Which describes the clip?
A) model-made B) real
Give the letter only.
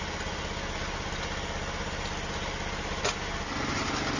B